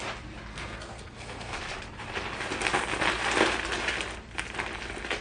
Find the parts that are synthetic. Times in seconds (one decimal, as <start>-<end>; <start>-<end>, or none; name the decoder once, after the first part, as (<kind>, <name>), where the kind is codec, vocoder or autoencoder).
0.5-1.6 (codec, SNAC)